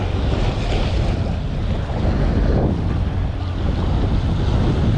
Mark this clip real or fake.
real